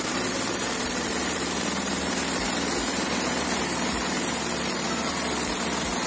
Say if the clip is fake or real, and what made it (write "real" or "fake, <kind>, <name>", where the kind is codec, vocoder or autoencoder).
fake, vocoder, BigVGAN v2